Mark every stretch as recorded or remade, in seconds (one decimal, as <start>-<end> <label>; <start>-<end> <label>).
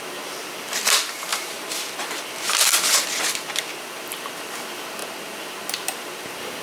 0.0-1.3 recorded; 1.3-3.7 remade; 3.7-6.6 recorded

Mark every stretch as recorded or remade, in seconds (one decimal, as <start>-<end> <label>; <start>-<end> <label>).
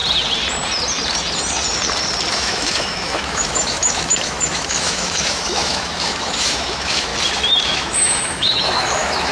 0.0-2.3 recorded; 2.3-7.1 remade; 7.1-7.6 recorded; 7.6-9.3 remade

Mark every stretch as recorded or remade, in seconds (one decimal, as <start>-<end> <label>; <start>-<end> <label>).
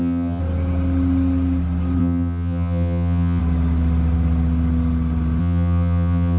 0.0-0.4 remade; 0.4-2.0 recorded; 2.0-3.4 remade; 3.4-5.4 recorded; 5.4-6.4 remade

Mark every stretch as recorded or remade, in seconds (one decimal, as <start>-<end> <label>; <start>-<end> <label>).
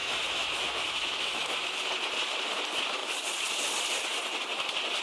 0.0-1.9 remade; 1.9-5.0 recorded